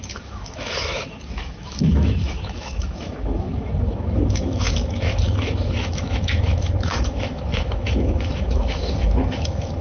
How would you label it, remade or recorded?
remade